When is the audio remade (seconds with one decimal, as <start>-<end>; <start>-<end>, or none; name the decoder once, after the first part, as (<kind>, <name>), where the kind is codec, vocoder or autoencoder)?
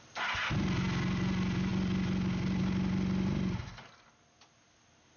none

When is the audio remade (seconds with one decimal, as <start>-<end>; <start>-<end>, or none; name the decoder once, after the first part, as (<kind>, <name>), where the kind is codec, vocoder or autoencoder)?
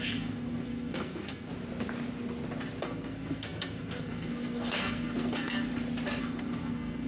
0.0-1.5 (codec, SNAC); 2.8-5.7; 6.2-7.1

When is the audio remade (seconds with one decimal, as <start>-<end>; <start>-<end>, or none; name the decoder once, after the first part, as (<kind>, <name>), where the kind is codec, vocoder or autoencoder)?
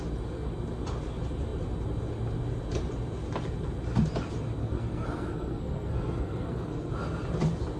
4.6-6.9 (codec, SNAC)